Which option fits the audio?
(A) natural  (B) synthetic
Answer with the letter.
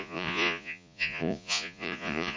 B